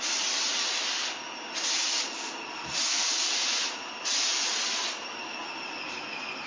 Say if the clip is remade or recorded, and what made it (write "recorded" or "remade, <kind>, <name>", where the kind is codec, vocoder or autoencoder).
recorded